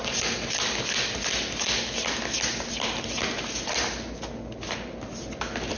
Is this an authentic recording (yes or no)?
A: yes